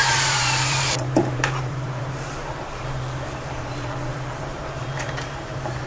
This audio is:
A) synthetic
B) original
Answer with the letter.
A